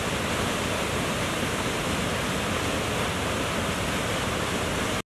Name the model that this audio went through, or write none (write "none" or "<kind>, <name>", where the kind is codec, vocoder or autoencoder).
none